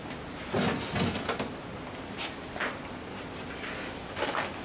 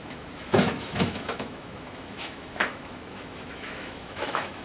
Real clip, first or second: first